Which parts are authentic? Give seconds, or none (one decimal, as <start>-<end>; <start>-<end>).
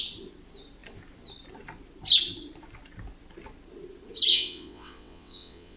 0.0-4.3